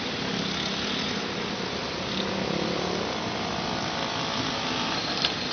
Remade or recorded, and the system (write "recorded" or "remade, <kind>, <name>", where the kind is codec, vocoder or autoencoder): recorded